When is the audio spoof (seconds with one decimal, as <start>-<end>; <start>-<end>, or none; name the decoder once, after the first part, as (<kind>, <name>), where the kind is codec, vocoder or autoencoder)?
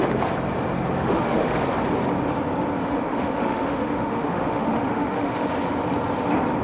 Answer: 1.0-1.5 (autoencoder, DAC-VAE); 2.8-5.5